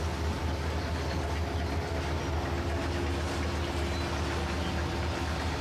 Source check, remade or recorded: recorded